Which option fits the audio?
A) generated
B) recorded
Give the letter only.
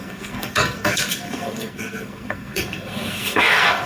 A